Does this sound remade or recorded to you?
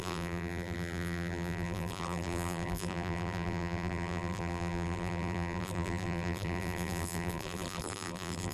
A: remade